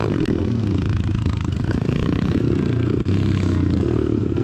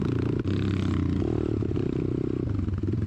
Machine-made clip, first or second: first